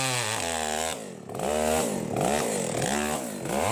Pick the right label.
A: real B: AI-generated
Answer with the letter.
A